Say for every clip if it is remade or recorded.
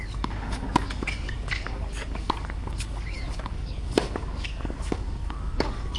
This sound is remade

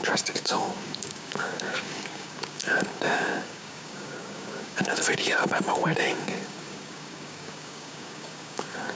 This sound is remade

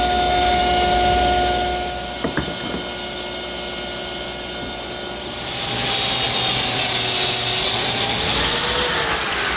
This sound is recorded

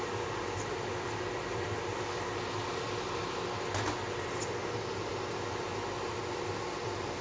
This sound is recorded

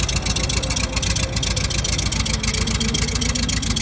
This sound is recorded